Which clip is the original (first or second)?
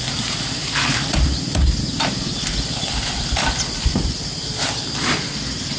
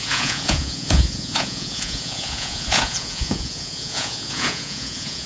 first